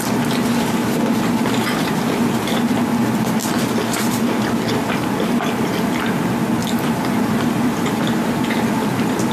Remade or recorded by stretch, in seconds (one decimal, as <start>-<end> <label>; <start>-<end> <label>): 0.0-6.6 recorded; 6.6-8.0 remade; 8.0-9.3 recorded